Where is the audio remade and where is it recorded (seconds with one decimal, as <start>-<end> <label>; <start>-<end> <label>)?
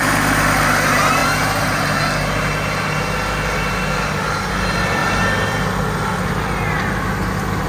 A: 0.0-7.7 recorded